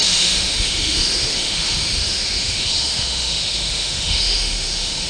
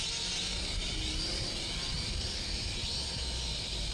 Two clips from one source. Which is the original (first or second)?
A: second